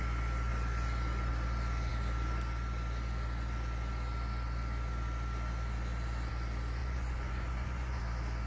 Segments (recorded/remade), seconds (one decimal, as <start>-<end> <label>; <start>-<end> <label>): 0.0-6.8 recorded; 6.8-8.0 remade; 8.0-8.5 recorded